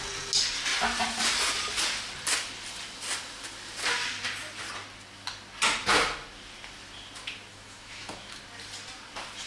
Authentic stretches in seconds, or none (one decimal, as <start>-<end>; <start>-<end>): 0.0-7.5; 8.4-9.5